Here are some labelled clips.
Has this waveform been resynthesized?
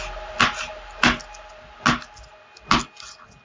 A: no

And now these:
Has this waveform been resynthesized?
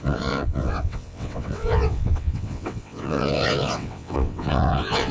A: yes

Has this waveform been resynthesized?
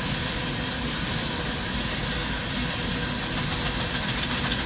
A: no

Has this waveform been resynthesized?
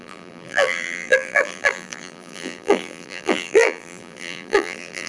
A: yes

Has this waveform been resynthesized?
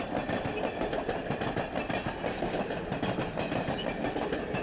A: no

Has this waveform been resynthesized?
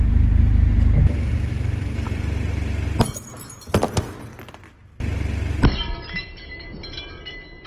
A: no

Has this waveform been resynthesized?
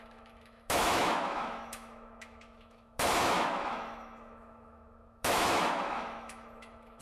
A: yes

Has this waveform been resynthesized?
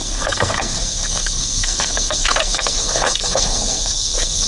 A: yes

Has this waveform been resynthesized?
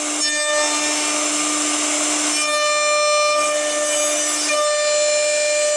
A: no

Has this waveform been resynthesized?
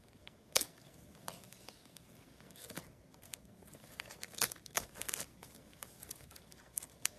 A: yes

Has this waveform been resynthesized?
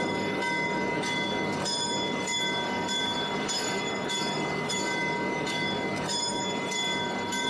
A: yes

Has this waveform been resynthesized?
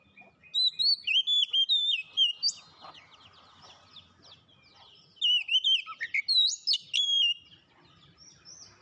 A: no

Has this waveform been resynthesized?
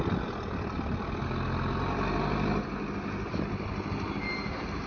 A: no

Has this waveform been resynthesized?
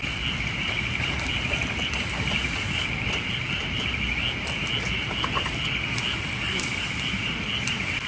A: no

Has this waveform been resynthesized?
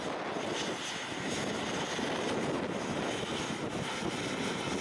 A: no